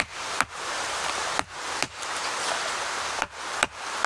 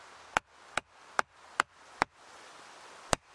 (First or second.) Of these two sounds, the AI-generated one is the first